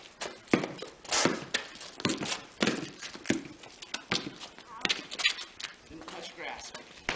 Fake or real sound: real